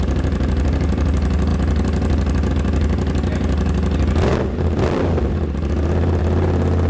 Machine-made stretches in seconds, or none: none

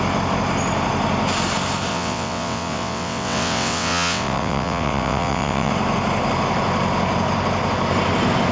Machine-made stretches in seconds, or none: 1.9-5.7 (vocoder, WaveNeXt)

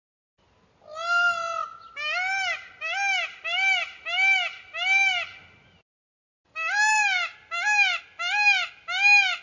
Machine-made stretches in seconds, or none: none

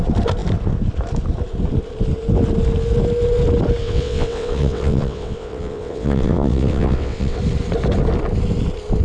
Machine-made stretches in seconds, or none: 3.8-7.4 (vocoder, WaveNeXt)